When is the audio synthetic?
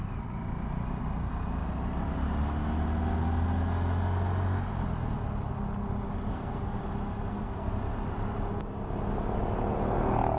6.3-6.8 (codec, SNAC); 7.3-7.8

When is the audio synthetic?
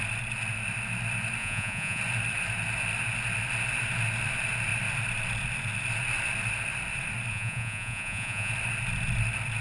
1.4-2.0 (vocoder, Vocos); 7.3-8.5